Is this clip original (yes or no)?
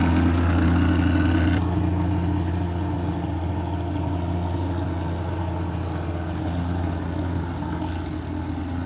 yes